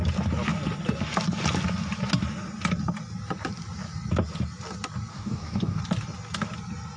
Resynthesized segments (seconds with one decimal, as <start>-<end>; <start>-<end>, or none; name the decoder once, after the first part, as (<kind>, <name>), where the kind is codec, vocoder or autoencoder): 5.1-5.8 (codec, DAC)